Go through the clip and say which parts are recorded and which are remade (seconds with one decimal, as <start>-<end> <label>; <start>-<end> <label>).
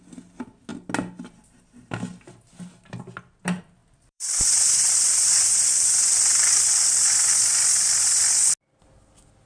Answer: 0.0-3.8 recorded; 3.8-7.3 remade; 7.3-9.5 recorded